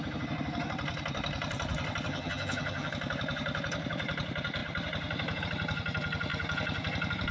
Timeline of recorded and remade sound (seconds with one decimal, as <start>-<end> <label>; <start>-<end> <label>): 0.0-2.1 recorded; 2.1-2.9 remade; 2.9-7.3 recorded

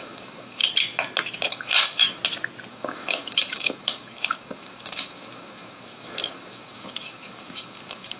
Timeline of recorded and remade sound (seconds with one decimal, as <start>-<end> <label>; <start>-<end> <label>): 0.0-0.6 remade; 0.6-1.5 recorded; 1.5-2.2 remade; 2.2-2.7 recorded; 2.7-8.2 remade